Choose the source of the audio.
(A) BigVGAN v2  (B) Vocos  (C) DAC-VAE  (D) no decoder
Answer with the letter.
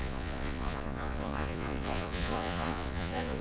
B